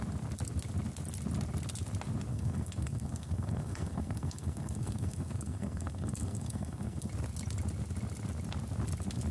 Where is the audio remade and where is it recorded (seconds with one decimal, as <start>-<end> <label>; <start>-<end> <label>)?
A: 0.0-2.3 recorded; 2.3-7.1 remade; 7.1-9.3 recorded